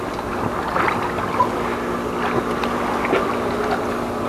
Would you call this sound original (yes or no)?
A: yes